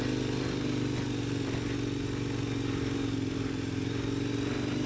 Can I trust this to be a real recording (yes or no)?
yes